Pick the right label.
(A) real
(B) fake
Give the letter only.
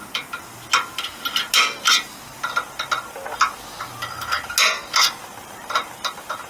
A